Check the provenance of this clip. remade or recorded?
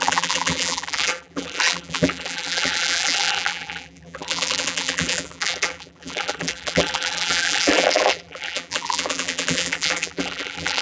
remade